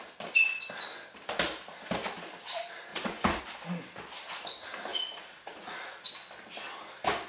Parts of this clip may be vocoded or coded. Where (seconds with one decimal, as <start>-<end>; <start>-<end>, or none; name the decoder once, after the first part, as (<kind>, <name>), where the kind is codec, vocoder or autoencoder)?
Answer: 2.9-3.4 (vocoder, Vocos); 4.9-6.0

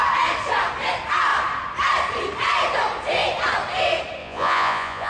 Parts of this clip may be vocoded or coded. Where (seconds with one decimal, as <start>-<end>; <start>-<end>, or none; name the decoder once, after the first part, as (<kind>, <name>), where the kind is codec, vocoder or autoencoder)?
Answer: 4.2-5.1 (vocoder, Vocos)

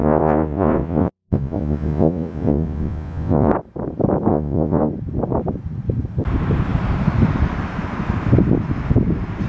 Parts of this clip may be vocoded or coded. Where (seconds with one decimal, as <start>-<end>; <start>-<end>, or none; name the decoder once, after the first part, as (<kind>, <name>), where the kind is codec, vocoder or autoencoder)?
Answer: 0.0-3.5 (vocoder, Vocos); 4.3-4.9

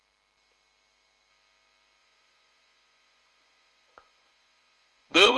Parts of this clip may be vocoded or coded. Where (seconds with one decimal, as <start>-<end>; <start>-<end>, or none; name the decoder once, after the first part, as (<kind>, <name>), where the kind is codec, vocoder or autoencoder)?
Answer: 2.0-5.4 (vocoder, Vocos)

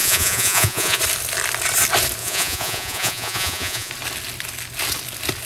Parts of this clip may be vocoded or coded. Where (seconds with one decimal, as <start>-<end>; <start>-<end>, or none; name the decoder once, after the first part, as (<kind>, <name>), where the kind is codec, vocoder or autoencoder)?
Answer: 0.0-1.0 (vocoder, Vocos); 2.2-3.9

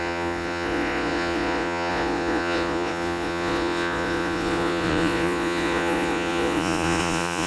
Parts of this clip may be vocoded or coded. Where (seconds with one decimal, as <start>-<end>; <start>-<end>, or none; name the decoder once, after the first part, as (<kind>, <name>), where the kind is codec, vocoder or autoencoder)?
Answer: 0.0-7.5 (vocoder, Vocos)